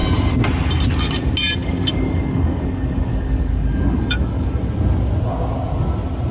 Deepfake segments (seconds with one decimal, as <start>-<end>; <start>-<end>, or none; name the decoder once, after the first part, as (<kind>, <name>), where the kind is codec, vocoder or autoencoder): 1.6-4.6 (codec, DAC)